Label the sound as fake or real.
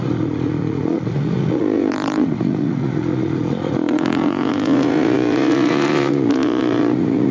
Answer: fake